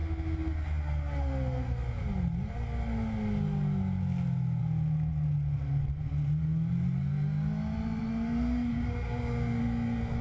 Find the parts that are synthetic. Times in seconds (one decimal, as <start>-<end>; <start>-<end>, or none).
8.7-9.6